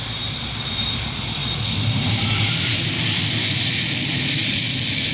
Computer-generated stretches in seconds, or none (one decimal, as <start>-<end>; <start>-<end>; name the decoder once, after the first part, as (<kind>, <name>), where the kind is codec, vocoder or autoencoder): 0.0-1.4 (vocoder, BigVGAN v2); 4.4-5.1

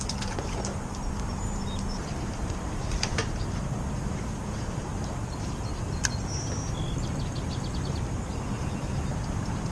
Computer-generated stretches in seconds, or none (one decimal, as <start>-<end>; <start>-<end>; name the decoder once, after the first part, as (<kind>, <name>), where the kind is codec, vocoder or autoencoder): 2.0-6.2 (vocoder, BigVGAN v2)

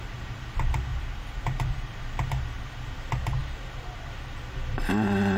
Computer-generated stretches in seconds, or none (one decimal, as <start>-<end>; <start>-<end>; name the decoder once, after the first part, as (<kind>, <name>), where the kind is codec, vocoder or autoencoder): 0.9-2.0 (vocoder, BigVGAN v2)

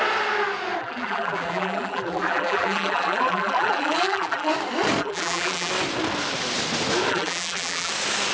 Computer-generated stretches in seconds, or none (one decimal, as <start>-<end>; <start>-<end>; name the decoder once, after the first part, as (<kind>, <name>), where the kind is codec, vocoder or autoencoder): 0.8-4.5 (vocoder, BigVGAN v2); 5.0-5.7; 7.1-7.9

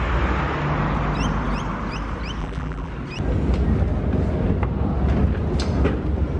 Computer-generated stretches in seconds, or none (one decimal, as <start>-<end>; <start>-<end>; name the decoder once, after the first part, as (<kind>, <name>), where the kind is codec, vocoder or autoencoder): 2.4-2.9 (vocoder, BigVGAN v2)

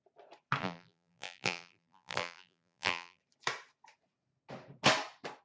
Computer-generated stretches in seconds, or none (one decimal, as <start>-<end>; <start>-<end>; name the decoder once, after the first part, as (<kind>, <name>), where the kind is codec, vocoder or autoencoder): 0.6-3.2 (vocoder, BigVGAN v2)

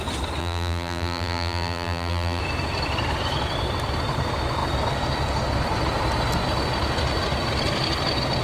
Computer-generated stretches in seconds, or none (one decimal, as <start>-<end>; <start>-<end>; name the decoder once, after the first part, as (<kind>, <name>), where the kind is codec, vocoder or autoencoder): 0.4-2.4 (vocoder, BigVGAN v2)

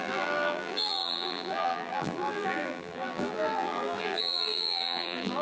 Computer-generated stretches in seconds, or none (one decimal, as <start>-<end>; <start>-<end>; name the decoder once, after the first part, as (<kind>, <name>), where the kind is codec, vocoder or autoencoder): 0.0-5.4 (vocoder, BigVGAN v2)